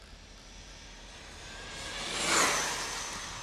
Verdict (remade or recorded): recorded